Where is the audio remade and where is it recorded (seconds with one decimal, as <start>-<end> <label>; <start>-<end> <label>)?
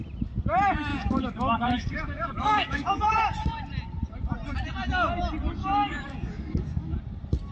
0.0-0.9 recorded; 0.9-3.2 remade; 3.2-5.6 recorded; 5.6-7.0 remade; 7.0-7.5 recorded